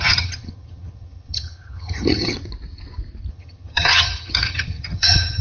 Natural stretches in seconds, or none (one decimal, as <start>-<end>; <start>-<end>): 2.3-3.3